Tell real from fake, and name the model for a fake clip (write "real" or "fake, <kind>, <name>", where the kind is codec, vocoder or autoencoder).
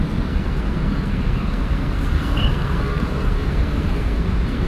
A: fake, codec, SNAC